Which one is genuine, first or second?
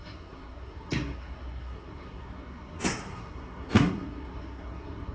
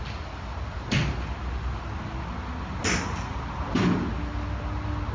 second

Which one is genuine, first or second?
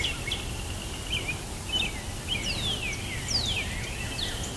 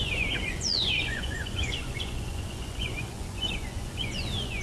first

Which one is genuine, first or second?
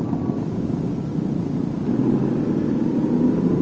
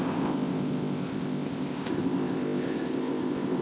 first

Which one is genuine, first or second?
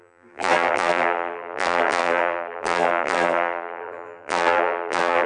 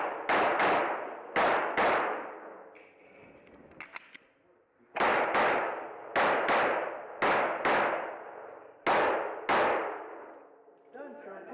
second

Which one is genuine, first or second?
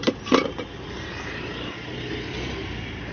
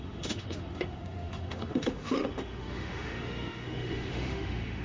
first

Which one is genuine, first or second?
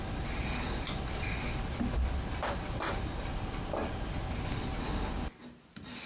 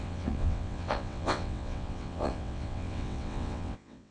first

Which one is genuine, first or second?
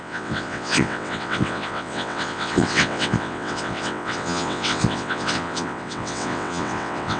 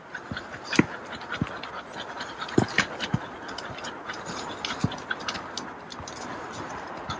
second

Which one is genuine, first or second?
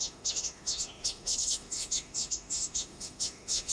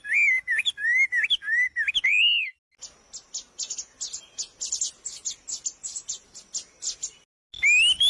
second